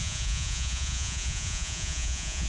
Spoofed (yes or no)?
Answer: yes